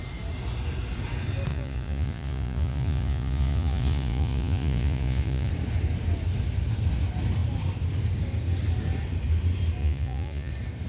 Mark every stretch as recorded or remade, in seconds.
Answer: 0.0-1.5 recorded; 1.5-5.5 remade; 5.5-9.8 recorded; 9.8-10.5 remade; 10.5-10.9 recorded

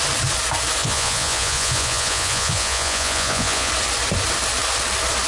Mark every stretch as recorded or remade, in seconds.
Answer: 0.0-0.8 recorded; 0.8-3.7 remade; 3.7-5.3 recorded

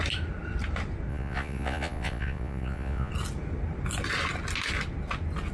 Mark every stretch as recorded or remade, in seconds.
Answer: 0.0-1.1 recorded; 1.1-3.1 remade; 3.1-5.5 recorded